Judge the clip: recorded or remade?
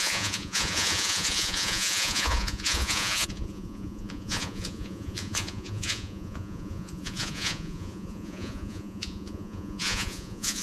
remade